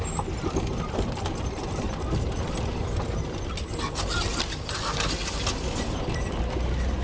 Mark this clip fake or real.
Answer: real